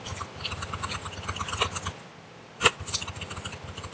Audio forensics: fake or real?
real